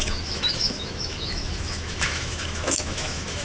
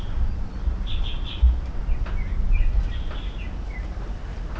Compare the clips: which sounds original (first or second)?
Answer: second